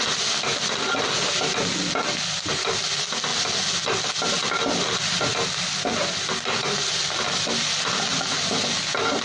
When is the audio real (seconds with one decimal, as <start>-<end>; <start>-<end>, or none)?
0.0-9.2